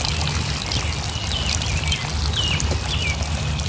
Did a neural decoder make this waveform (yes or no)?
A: no